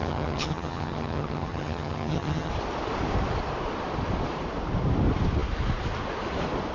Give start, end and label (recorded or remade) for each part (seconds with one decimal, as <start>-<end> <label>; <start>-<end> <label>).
0.0-2.5 remade; 2.5-6.7 recorded